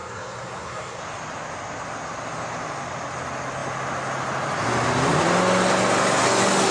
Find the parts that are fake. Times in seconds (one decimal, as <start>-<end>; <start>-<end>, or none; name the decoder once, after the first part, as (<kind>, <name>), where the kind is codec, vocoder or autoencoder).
0.0-1.0 (codec, SNAC)